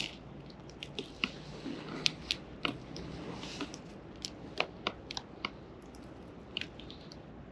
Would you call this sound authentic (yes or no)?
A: yes